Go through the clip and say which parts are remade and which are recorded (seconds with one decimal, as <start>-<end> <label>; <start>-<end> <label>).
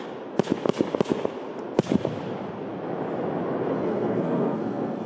0.0-3.7 recorded; 3.7-5.1 remade